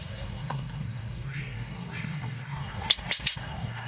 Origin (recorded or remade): remade